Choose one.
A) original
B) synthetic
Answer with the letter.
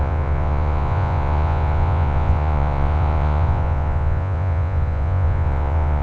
B